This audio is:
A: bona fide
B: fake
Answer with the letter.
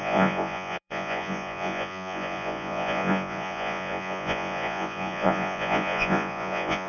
B